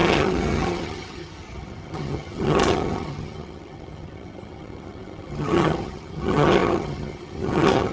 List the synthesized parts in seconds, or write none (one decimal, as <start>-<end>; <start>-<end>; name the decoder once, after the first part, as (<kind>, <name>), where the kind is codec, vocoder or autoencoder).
0.0-7.9 (vocoder, HiFi-GAN)

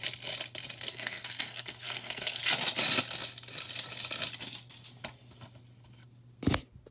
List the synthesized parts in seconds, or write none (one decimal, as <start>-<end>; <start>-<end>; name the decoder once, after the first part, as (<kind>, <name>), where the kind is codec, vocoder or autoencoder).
0.9-2.4 (codec, SNAC)